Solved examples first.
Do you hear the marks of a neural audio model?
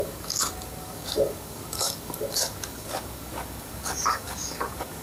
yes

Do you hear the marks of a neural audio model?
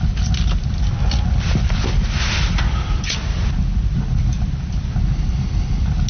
no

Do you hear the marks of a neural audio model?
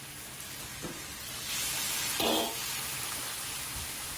no